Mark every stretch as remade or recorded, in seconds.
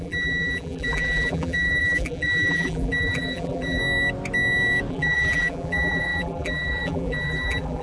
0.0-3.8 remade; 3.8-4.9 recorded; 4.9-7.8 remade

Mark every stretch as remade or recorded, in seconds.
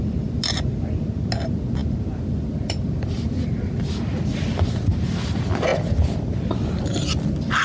0.0-7.6 recorded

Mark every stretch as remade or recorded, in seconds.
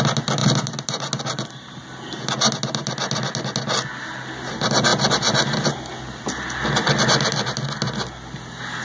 0.0-8.8 recorded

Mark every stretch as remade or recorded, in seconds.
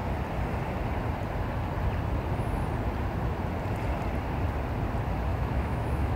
0.0-5.3 recorded; 5.3-6.2 remade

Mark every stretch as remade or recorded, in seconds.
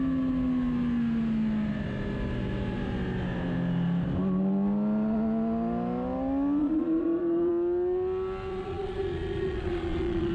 0.0-6.6 recorded; 6.6-7.5 remade; 7.5-8.5 recorded; 8.5-10.3 remade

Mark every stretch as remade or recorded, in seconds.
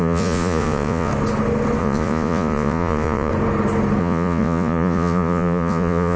0.0-1.1 remade; 1.1-1.8 recorded; 1.8-3.3 remade; 3.3-4.0 recorded; 4.0-6.2 remade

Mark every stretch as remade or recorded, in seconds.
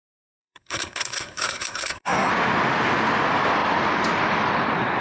0.0-0.4 recorded; 0.4-2.3 remade; 2.3-5.0 recorded